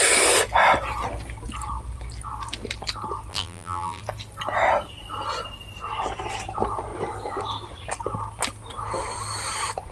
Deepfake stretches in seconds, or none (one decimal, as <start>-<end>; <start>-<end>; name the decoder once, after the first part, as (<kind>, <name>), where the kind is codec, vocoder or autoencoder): 3.3-4.0 (vocoder, BigVGAN v2)